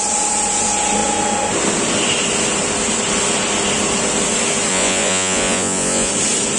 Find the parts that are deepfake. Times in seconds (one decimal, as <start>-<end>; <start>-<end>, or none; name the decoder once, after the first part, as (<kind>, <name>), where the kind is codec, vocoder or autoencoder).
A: 4.7-6.1 (vocoder, Vocos)